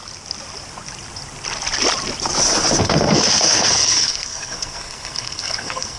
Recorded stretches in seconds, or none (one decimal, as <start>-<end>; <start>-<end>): 0.0-2.8

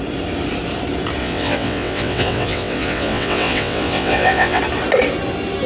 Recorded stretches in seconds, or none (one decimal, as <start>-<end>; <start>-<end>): 0.0-1.2; 4.6-5.7

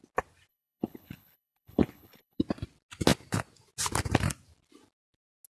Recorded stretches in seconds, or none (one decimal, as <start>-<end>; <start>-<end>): 0.0-0.5; 2.4-5.5

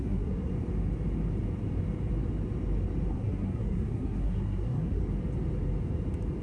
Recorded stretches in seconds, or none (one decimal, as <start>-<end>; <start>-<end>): 0.5-3.1; 5.0-6.4

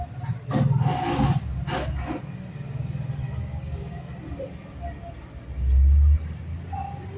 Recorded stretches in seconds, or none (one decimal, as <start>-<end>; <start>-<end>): 0.0-3.4; 4.0-7.2

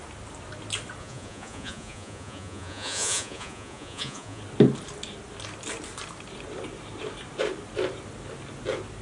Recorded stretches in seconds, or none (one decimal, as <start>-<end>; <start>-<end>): 0.0-1.0; 4.4-9.0

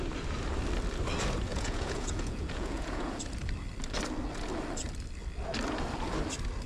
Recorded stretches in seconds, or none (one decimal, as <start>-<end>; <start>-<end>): 0.0-1.5; 3.2-6.7